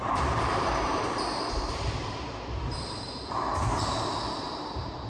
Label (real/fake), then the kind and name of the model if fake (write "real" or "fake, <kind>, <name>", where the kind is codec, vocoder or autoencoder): fake, vocoder, BigVGAN v2